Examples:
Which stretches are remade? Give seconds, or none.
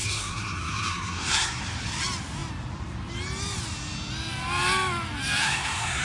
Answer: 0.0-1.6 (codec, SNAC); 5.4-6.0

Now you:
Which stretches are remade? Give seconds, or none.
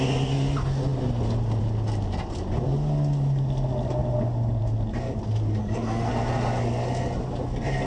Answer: 5.6-6.1 (codec, SNAC)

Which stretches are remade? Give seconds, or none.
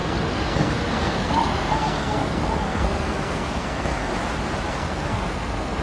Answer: 0.0-4.1 (codec, SNAC); 4.7-5.8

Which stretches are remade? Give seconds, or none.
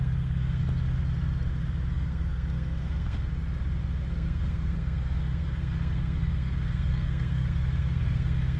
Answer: 0.0-0.6 (codec, SNAC); 1.9-3.3; 4.1-8.6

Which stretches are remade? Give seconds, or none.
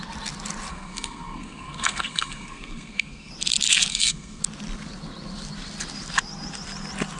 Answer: 0.7-3.3 (codec, SNAC); 3.9-4.4